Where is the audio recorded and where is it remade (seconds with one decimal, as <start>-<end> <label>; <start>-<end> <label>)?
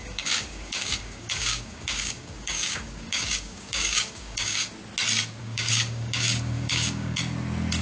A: 0.0-4.7 remade; 4.7-5.4 recorded; 5.4-7.2 remade; 7.2-7.8 recorded